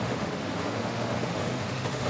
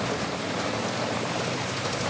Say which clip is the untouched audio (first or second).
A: second